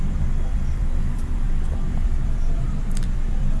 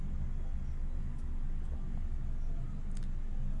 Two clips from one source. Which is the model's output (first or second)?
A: first